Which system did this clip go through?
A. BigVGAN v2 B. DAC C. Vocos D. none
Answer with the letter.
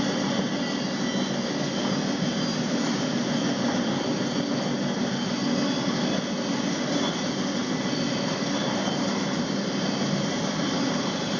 D